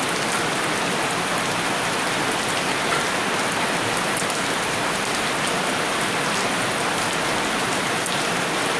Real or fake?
real